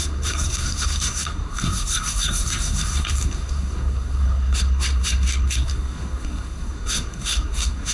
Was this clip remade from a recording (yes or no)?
yes